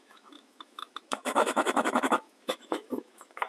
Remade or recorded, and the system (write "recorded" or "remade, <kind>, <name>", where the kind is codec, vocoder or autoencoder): remade, autoencoder, DAC-VAE